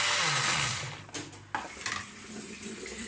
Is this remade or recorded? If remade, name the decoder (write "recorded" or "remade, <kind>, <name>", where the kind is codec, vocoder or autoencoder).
recorded